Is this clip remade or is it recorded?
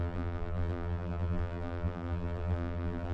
remade